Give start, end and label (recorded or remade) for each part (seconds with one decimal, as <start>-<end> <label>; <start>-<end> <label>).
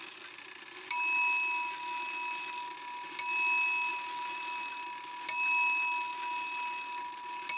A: 0.0-3.9 recorded; 3.9-4.7 remade; 4.7-7.6 recorded